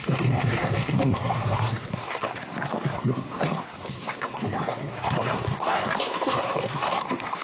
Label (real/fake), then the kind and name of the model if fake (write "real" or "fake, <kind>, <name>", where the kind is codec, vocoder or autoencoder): fake, codec, SNAC